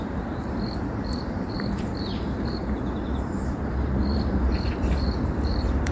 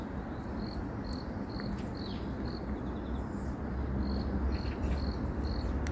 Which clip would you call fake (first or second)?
first